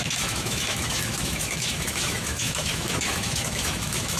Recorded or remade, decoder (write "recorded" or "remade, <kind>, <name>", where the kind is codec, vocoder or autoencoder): remade, autoencoder, DAC-VAE